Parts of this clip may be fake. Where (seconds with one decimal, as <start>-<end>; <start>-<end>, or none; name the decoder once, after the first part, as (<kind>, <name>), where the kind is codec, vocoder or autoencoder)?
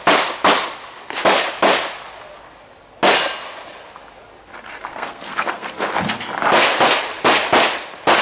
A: 4.9-5.7 (codec, SNAC)